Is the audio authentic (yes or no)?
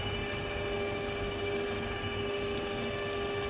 yes